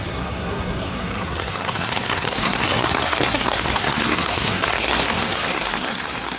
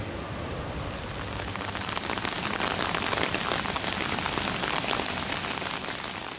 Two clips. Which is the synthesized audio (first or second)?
first